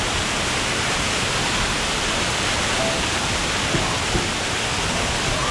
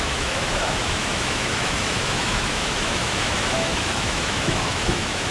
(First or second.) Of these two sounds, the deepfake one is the second